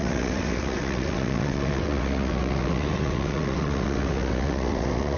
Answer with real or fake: fake